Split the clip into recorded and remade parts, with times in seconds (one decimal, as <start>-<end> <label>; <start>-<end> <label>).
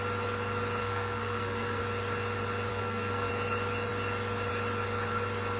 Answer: 0.0-0.8 recorded; 0.8-1.8 remade; 1.8-2.7 recorded; 2.7-3.3 remade; 3.3-5.6 recorded